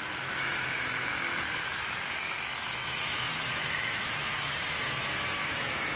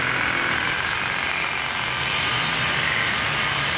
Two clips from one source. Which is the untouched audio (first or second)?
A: second